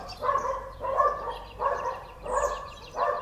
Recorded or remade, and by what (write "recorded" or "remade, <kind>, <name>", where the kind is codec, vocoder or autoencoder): remade, vocoder, BigVGAN v2